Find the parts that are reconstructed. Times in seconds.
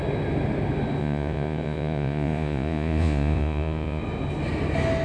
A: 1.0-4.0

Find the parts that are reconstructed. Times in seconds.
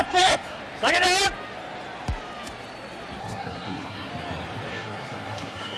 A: 0.0-0.6; 3.2-4.1; 4.7-5.8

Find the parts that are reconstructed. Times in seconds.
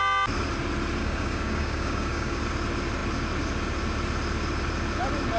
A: 1.0-2.4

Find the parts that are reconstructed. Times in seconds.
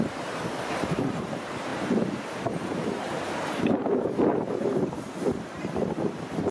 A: 0.0-6.5